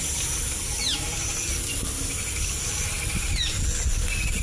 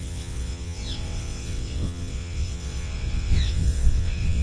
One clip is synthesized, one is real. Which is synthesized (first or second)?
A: second